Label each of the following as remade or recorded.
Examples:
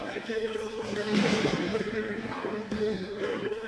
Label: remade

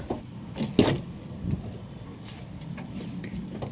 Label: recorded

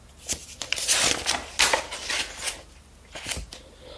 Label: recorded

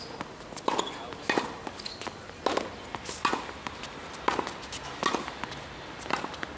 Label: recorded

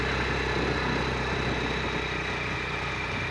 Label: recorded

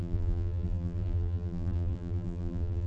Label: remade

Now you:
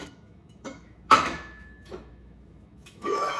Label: remade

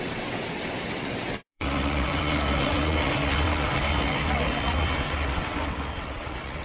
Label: remade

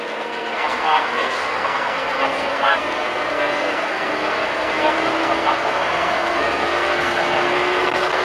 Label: remade